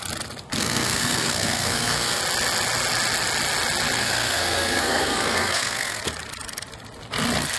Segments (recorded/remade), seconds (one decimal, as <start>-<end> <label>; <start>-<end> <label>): 0.0-0.6 recorded; 0.6-2.2 remade; 2.2-4.0 recorded; 4.0-6.0 remade; 6.0-7.6 recorded